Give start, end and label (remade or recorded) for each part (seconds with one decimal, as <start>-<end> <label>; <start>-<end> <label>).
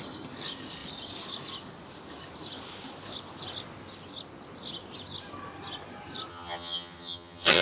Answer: 0.0-6.3 recorded; 6.3-7.6 remade